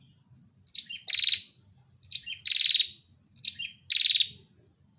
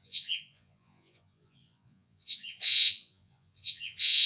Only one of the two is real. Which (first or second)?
first